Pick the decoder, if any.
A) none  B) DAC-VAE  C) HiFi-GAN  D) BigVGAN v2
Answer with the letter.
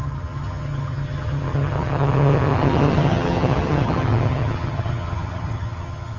C